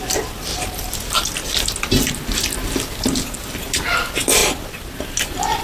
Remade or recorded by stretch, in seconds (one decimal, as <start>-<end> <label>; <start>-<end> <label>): 0.0-0.5 remade; 0.5-3.5 recorded; 3.5-5.6 remade